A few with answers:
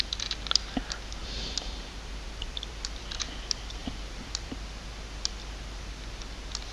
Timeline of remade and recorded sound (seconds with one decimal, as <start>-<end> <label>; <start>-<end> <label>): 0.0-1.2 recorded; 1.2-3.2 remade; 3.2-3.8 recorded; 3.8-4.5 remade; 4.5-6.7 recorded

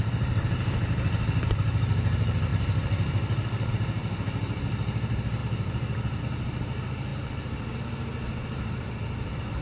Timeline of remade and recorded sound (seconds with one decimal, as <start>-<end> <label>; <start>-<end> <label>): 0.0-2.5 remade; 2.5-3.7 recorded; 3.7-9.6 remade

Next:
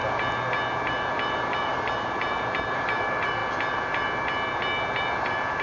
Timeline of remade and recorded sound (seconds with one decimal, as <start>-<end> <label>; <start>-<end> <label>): 0.0-1.1 recorded; 1.1-3.4 remade; 3.4-5.0 recorded; 5.0-5.6 remade

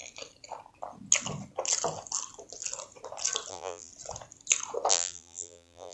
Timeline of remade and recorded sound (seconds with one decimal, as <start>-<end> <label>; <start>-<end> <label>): 0.0-3.5 recorded; 3.5-3.9 remade; 3.9-4.9 recorded; 4.9-5.9 remade